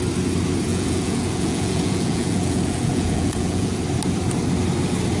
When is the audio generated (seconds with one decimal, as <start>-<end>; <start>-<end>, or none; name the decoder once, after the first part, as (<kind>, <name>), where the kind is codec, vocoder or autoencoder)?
0.7-3.8 (vocoder, Vocos)